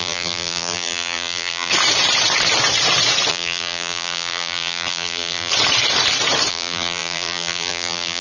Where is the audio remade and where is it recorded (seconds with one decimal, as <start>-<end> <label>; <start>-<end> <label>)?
0.0-1.7 remade; 1.7-3.3 recorded; 3.3-5.5 remade; 5.5-6.5 recorded; 6.5-8.2 remade